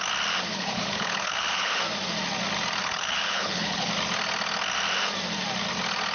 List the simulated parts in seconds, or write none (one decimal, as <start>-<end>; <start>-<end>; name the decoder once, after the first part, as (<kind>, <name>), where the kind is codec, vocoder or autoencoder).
0.5-1.8 (codec, HILCodec); 2.8-3.9